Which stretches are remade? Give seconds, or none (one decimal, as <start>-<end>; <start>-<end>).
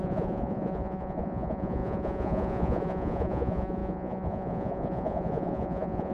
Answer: 0.0-6.1